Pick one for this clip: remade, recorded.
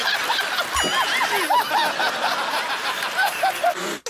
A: recorded